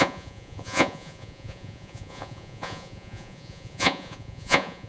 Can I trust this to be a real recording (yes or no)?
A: no